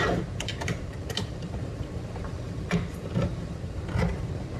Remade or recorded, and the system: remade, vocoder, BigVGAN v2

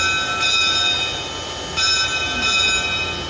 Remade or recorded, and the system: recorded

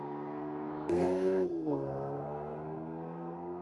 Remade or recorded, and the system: remade, codec, SNAC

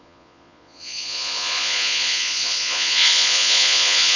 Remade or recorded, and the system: remade, vocoder, Vocos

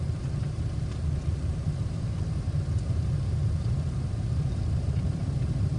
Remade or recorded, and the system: remade, vocoder, BigVGAN v2